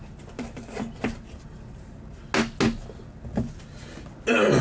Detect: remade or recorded recorded